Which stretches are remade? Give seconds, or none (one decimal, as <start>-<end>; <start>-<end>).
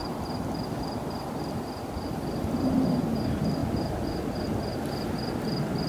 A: none